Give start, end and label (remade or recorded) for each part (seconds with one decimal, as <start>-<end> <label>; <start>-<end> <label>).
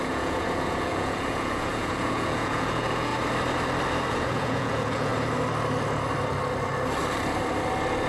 0.0-3.1 remade; 3.1-4.1 recorded; 4.1-5.1 remade; 5.1-8.1 recorded